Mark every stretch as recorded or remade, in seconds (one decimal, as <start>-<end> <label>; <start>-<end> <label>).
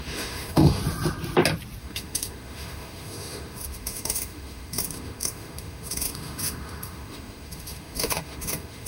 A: 0.0-0.8 remade; 0.8-1.8 recorded; 1.8-8.9 remade